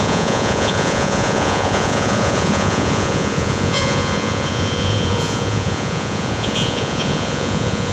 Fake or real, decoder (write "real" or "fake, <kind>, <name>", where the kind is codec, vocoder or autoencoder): fake, vocoder, Vocos